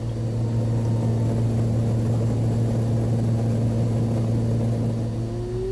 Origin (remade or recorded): recorded